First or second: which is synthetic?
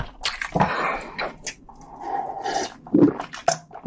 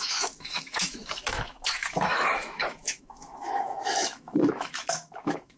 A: second